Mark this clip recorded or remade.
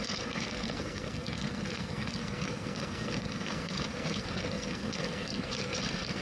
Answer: remade